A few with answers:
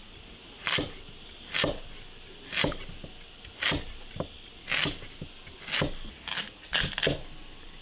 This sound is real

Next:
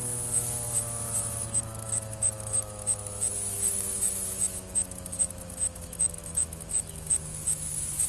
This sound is fake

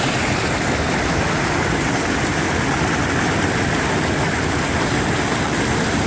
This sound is real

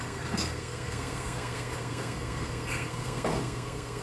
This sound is fake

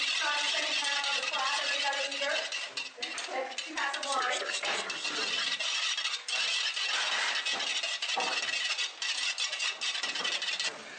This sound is real